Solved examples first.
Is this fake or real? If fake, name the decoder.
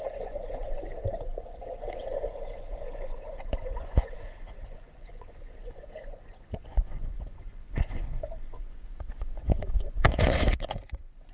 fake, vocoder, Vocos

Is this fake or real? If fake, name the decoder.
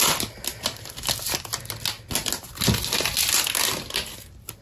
real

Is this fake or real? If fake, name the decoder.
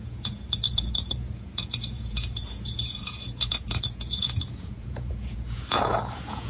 fake, vocoder, Vocos